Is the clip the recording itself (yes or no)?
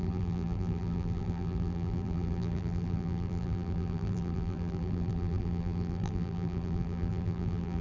no